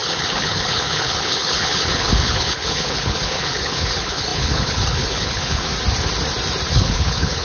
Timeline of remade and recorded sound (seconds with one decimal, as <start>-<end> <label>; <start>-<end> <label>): 0.0-5.7 remade; 5.7-6.7 recorded; 6.7-7.4 remade